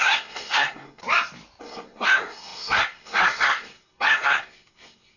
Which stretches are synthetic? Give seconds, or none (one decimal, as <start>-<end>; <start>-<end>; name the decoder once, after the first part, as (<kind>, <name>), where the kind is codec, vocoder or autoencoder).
0.0-1.0 (codec, SNAC); 1.6-5.2